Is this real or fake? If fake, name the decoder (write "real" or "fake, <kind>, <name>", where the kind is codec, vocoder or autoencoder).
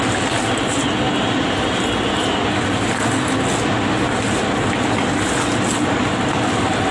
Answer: real